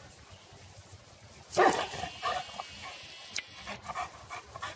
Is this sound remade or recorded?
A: recorded